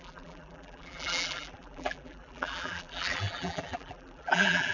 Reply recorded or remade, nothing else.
remade